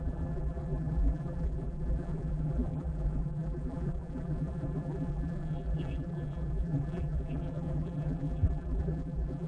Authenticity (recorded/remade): remade